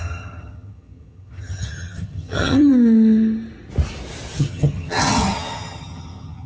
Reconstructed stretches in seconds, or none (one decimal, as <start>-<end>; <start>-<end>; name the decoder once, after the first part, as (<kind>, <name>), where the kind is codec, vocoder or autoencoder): 0.0-2.7 (vocoder, HiFi-GAN); 4.4-6.5